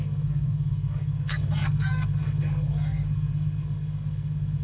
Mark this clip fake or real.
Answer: fake